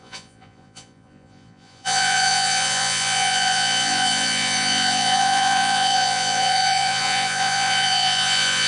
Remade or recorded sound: remade